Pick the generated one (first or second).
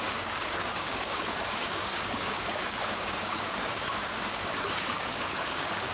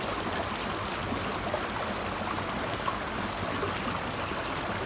first